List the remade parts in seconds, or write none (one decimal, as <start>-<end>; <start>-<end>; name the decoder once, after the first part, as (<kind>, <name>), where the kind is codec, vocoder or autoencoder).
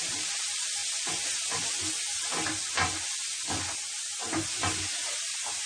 0.0-0.8 (vocoder, BigVGAN v2); 4.2-5.7